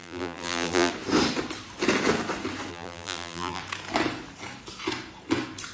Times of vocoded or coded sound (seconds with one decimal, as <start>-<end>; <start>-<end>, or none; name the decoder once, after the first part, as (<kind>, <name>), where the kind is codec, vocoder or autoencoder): 0.0-0.9 (vocoder, BigVGAN v2); 2.7-3.6